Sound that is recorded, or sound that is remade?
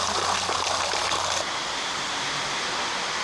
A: recorded